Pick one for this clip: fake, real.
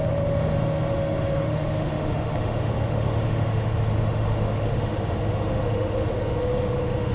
fake